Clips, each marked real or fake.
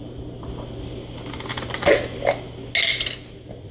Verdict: real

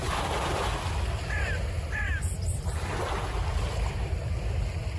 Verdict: real